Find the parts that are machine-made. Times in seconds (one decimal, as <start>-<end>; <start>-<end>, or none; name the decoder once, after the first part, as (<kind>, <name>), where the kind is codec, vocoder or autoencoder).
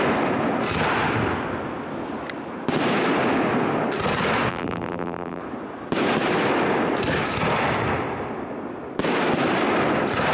4.5-5.4 (vocoder, BigVGAN v2)